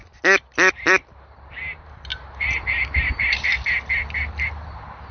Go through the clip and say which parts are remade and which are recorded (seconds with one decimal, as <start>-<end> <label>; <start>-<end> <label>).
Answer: 0.0-2.1 recorded; 2.1-3.5 remade; 3.5-5.1 recorded